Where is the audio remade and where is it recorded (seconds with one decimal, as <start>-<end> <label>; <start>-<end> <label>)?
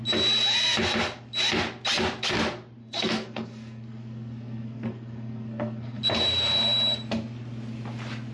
0.0-2.8 recorded; 2.8-6.0 remade; 6.0-8.3 recorded